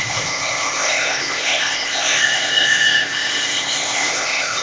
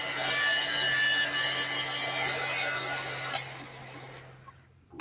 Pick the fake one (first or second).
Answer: first